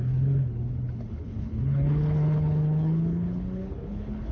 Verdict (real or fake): fake